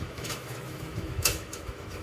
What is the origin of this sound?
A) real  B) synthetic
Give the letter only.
B